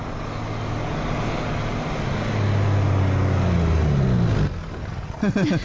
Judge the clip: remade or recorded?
recorded